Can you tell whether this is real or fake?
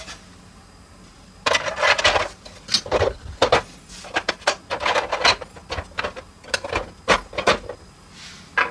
real